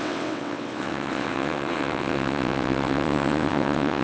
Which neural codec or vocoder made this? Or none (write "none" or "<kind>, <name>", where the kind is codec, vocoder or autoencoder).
vocoder, WaveNeXt